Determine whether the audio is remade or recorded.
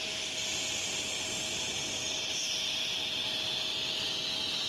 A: recorded